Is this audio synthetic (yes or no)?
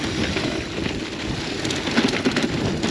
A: no